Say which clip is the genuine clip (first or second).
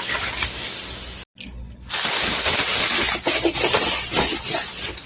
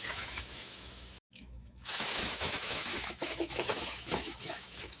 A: first